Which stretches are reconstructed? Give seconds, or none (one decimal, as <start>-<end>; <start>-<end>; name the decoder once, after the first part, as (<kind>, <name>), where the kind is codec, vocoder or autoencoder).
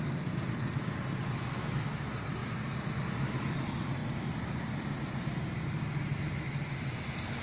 none